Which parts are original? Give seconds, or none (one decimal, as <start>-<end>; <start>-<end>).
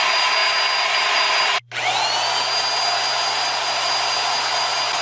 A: 0.0-5.0